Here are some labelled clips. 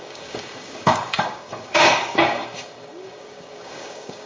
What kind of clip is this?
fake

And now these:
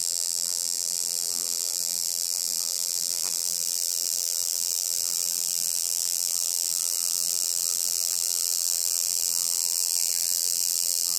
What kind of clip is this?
fake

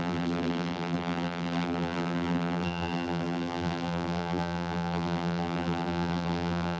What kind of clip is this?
fake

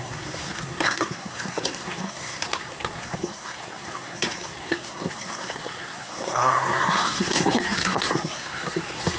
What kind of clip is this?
fake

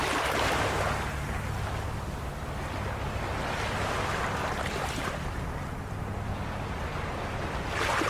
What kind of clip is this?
real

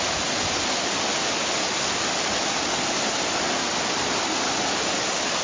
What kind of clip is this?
real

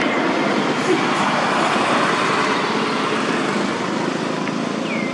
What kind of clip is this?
real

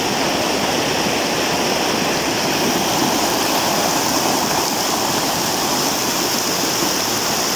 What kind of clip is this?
real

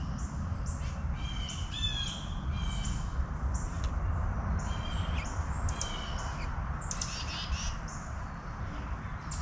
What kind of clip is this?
real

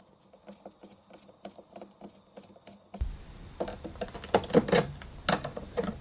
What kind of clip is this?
real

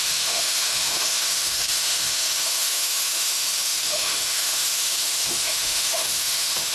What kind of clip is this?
fake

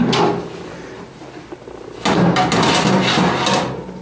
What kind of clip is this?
real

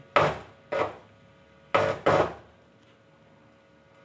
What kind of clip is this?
real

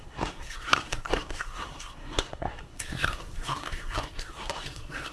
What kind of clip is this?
fake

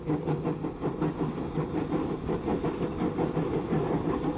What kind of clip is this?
real